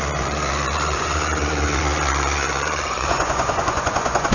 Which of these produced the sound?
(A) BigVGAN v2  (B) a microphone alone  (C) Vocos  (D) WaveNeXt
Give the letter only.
C